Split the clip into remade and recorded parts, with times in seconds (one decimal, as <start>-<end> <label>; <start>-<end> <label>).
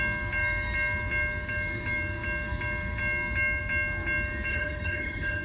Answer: 0.0-4.5 recorded; 4.5-5.4 remade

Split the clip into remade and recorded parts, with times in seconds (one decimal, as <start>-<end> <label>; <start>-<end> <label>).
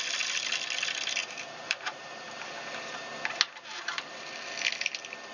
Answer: 0.0-1.2 recorded; 1.2-2.5 remade; 2.5-5.3 recorded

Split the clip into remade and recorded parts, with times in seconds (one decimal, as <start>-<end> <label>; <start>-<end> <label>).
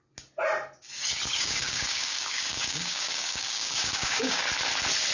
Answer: 0.0-1.3 recorded; 1.3-4.4 remade; 4.4-5.1 recorded